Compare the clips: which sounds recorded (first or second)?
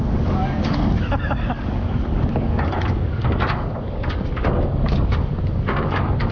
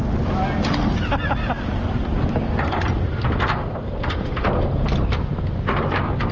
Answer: second